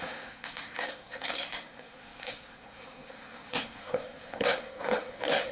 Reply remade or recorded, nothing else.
remade